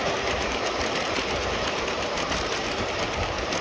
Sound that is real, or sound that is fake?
fake